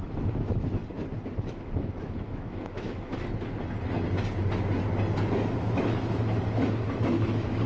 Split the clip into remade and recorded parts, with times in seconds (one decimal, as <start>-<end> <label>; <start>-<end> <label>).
0.0-0.8 remade; 0.8-1.3 recorded; 1.3-3.1 remade; 3.1-5.6 recorded; 5.6-7.7 remade